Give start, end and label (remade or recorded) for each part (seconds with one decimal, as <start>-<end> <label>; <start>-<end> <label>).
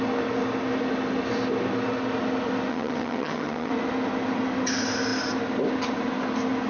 0.0-2.7 recorded; 2.7-3.7 remade; 3.7-6.7 recorded